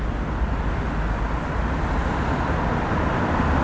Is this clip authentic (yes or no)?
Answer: yes